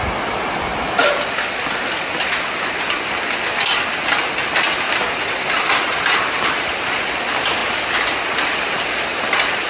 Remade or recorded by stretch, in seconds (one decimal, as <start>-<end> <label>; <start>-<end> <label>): 0.0-9.7 recorded